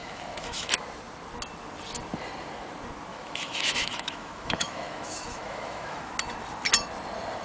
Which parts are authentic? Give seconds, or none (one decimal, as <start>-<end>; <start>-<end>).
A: 0.7-3.1; 6.1-7.4